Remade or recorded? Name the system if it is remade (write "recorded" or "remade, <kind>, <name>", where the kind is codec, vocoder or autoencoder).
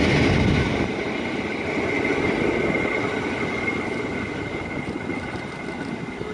recorded